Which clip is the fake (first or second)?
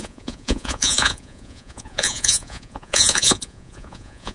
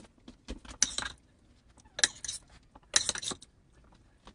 first